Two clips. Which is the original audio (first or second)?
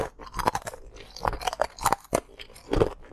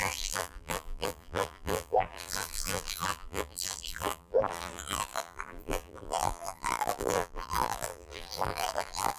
first